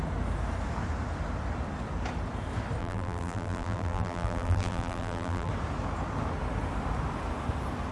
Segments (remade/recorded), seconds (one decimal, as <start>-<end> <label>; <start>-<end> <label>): 0.0-2.8 recorded; 2.8-5.5 remade; 5.5-7.9 recorded